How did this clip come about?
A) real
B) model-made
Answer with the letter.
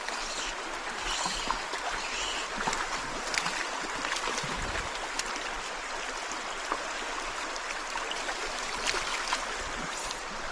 A